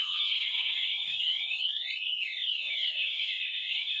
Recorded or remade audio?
remade